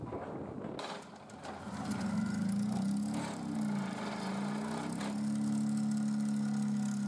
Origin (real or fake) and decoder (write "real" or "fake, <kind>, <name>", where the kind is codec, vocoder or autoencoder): real